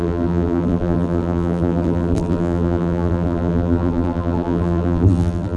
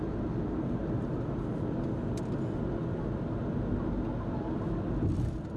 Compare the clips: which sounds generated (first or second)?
first